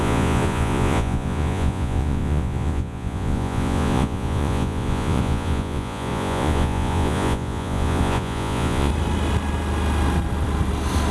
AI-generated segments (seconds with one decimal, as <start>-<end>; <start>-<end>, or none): 0.0-8.9